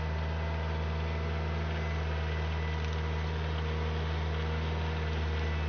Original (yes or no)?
yes